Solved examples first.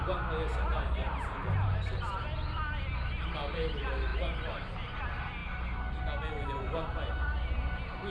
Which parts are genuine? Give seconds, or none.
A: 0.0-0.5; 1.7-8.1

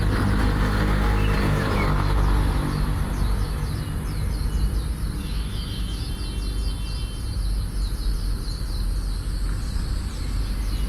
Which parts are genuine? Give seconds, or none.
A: 0.0-5.2; 6.1-10.9

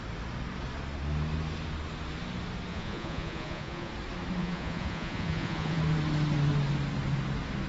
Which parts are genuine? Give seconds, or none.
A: 0.0-2.7; 3.9-4.4; 5.8-7.7